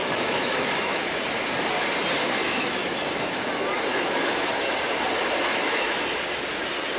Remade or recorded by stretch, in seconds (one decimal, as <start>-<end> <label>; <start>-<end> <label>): 0.0-1.2 remade; 1.2-2.2 recorded; 2.2-3.5 remade; 3.5-3.9 recorded; 3.9-4.7 remade; 4.7-5.5 recorded; 5.5-6.0 remade; 6.0-7.0 recorded